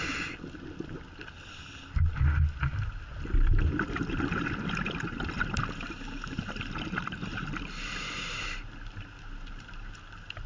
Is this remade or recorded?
recorded